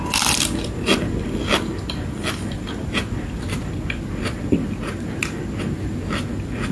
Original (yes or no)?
yes